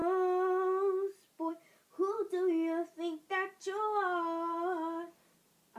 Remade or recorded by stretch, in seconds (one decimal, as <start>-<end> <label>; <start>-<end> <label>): 0.0-5.8 recorded